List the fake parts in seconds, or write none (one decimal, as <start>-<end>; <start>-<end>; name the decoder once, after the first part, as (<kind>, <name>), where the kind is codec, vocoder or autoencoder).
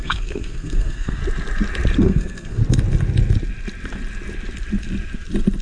0.0-1.2 (codec, SNAC); 2.0-2.6